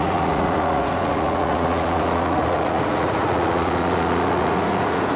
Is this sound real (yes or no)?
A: no